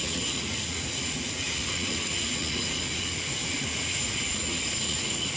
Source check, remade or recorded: remade